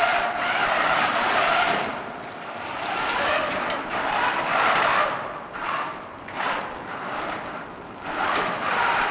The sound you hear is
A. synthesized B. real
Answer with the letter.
A